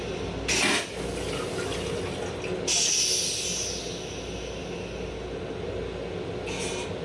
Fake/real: real